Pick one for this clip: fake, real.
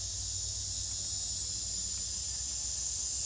real